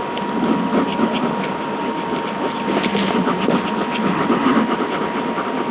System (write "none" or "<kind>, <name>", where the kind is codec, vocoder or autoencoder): none